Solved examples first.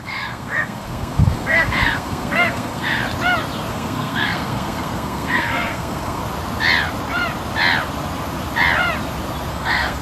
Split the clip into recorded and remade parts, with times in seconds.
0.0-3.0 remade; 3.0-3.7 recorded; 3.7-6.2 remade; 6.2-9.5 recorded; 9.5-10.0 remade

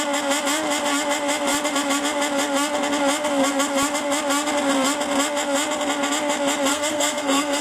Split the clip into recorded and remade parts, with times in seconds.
0.0-6.7 recorded; 6.7-7.6 remade

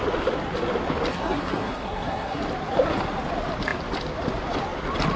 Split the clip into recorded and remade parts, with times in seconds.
0.0-1.1 recorded; 1.1-2.4 remade; 2.4-5.2 recorded

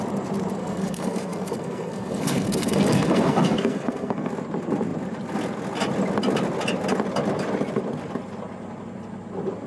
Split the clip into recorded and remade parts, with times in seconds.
0.0-0.6 recorded; 0.6-4.3 remade; 4.3-9.7 recorded

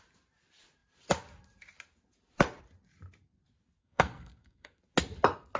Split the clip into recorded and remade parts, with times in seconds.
0.0-3.8 recorded; 3.8-4.8 remade; 4.8-5.6 recorded

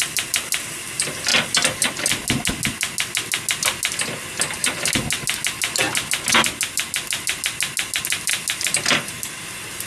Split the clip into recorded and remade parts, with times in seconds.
0.0-9.9 recorded

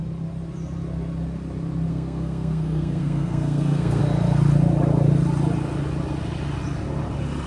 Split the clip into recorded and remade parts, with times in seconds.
0.0-1.9 recorded; 1.9-4.0 remade; 4.0-7.5 recorded